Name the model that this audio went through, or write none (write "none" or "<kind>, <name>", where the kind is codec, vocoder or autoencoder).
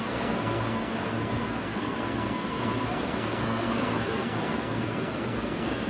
codec, SNAC